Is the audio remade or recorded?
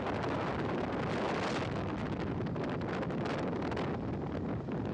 recorded